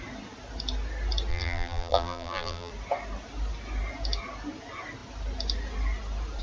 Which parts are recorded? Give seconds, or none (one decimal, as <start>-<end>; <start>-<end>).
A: 0.0-1.3; 2.7-6.4